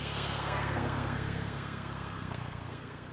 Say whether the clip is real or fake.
fake